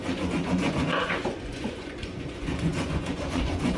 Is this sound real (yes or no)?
no